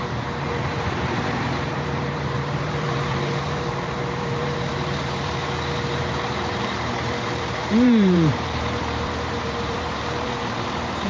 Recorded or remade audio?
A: remade